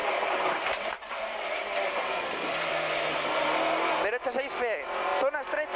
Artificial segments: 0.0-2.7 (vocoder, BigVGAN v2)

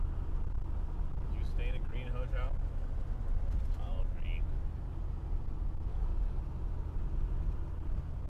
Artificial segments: 5.9-6.4 (codec, DAC)

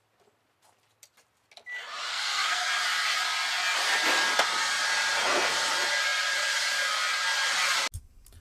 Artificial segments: 2.1-2.7 (codec, SNAC)

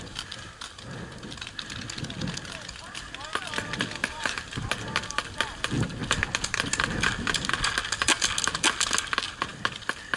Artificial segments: 4.0-4.7 (vocoder, BigVGAN v2)

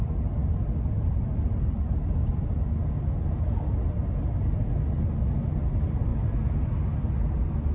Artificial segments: none

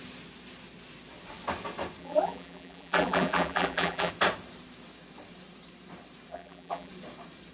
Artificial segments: 2.0-4.1 (vocoder, BigVGAN v2); 6.3-6.9